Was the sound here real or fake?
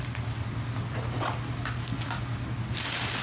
real